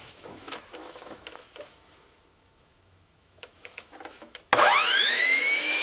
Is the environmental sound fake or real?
fake